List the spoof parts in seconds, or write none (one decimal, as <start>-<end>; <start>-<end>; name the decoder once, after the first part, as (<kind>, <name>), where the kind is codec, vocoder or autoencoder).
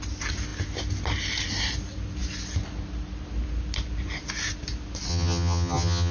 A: 5.1-6.1 (vocoder, HiFi-GAN)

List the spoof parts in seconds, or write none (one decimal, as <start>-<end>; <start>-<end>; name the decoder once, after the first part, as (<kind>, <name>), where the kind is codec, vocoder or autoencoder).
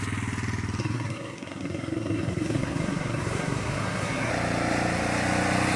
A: 0.8-4.3 (codec, SNAC)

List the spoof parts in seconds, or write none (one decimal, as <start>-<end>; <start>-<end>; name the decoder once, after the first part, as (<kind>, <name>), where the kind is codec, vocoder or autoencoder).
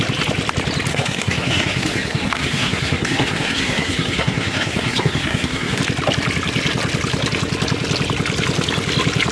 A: 0.9-5.8 (codec, SNAC)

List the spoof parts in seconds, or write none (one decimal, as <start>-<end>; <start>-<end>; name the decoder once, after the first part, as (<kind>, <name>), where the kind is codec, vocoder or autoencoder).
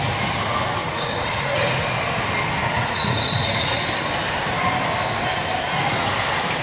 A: 0.8-1.7 (vocoder, Vocos); 2.7-3.8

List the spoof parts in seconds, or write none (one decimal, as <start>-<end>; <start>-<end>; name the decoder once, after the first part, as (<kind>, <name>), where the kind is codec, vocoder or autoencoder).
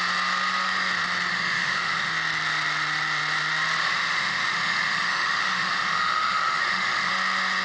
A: 1.3-2.1 (autoencoder, DAC-VAE); 3.8-7.1